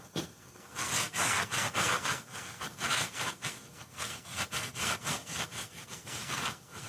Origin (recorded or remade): remade